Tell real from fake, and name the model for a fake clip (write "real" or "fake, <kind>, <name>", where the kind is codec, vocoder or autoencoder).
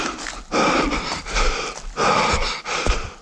real